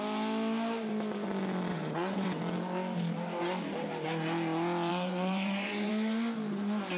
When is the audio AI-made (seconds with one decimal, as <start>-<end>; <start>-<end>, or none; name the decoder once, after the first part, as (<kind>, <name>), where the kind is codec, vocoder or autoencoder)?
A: 1.7-2.4 (vocoder, WaveNeXt); 4.9-5.9

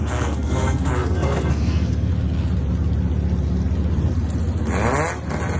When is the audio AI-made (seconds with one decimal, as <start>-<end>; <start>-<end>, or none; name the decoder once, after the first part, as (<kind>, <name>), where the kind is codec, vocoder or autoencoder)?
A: 0.0-2.1 (codec, SNAC)

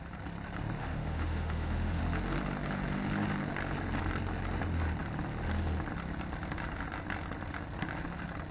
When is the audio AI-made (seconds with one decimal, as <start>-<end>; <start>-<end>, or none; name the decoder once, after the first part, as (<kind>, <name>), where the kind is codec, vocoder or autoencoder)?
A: 0.8-2.0 (autoencoder, DAC-VAE)

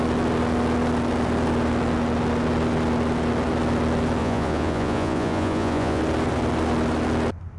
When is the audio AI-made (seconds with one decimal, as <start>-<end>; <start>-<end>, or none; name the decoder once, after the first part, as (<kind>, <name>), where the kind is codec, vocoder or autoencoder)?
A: 4.2-6.0 (vocoder, Vocos)

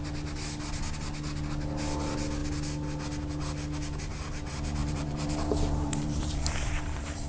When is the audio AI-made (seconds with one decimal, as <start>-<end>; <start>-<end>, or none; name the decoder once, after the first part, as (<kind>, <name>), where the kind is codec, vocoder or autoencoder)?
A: 4.8-7.3 (vocoder, BigVGAN v2)

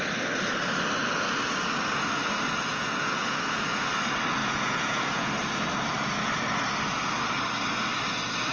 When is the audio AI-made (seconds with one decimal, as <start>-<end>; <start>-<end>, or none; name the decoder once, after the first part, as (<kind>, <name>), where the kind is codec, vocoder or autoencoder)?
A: 2.7-3.9 (vocoder, Vocos); 4.4-5.3